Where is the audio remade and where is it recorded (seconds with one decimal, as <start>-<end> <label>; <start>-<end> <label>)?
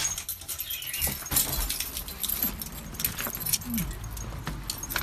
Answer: 0.0-5.0 recorded